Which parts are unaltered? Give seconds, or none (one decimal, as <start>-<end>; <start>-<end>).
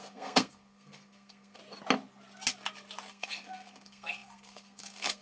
1.6-3.1